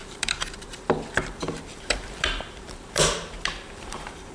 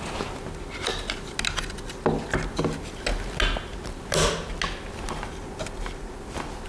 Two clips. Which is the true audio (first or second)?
second